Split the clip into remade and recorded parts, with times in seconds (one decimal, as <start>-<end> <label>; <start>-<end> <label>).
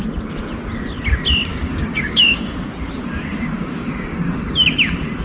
0.0-1.5 recorded; 1.5-2.7 remade; 2.7-3.3 recorded; 3.3-4.4 remade; 4.4-5.2 recorded